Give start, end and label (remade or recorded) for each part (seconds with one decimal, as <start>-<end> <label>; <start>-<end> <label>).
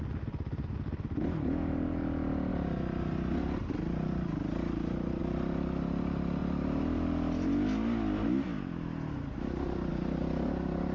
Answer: 0.0-10.9 recorded